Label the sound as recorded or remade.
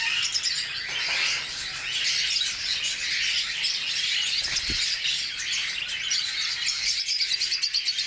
recorded